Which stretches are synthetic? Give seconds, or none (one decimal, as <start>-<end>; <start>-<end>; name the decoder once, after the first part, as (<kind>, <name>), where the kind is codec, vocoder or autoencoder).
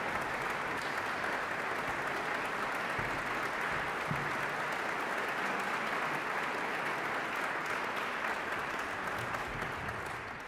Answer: none